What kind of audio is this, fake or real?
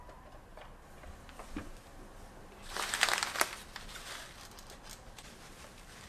real